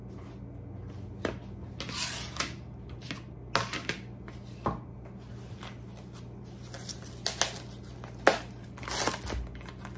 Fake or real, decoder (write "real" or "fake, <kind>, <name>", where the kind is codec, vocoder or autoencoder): real